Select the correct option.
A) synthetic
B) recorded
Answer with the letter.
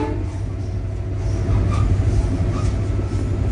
B